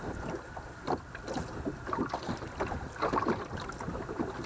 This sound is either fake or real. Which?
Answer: real